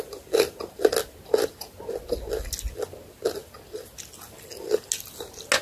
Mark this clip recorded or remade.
recorded